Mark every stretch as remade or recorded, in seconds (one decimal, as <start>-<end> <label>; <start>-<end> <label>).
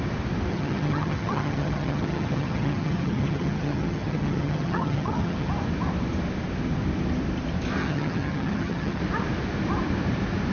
0.0-0.5 recorded; 0.5-5.5 remade; 5.5-7.8 recorded; 7.8-9.0 remade; 9.0-10.5 recorded